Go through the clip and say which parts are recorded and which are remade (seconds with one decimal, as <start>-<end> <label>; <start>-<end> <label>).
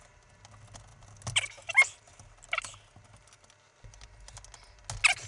0.0-5.3 recorded